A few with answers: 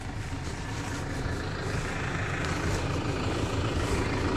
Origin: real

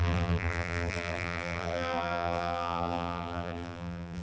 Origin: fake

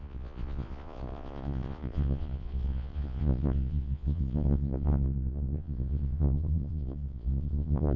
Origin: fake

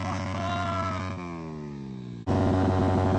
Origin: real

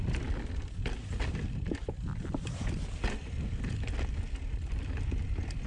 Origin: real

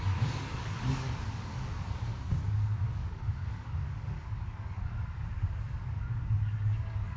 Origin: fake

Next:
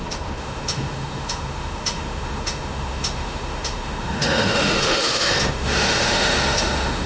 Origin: fake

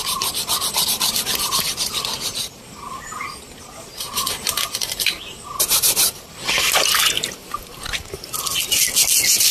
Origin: real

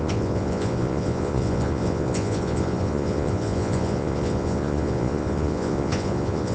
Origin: fake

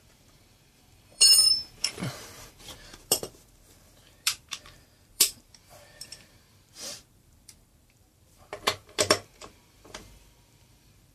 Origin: fake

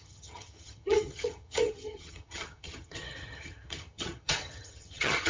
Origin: fake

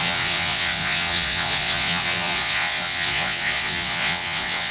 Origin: fake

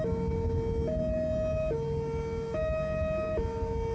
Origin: real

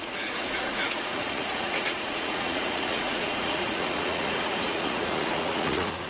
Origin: fake